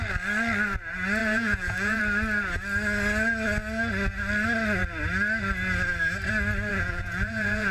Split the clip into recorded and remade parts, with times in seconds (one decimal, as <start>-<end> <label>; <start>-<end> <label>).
0.0-1.2 recorded; 1.2-2.0 remade; 2.0-6.7 recorded; 6.7-7.7 remade